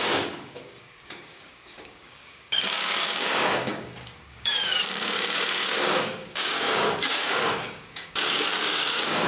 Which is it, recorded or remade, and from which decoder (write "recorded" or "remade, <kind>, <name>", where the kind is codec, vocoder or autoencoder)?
remade, codec, DAC